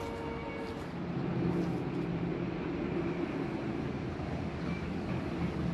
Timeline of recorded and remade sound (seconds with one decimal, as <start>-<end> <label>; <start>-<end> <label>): 0.0-4.5 recorded; 4.5-5.1 remade; 5.1-5.7 recorded